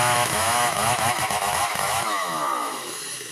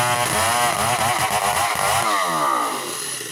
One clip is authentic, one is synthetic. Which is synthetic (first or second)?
first